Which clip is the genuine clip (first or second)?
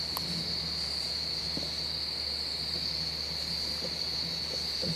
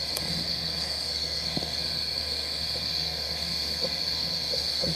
first